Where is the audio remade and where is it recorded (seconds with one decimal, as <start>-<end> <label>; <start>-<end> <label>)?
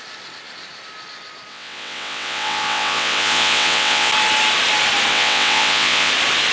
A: 0.0-1.5 recorded; 1.5-4.1 remade; 4.1-5.1 recorded; 5.1-6.1 remade; 6.1-6.5 recorded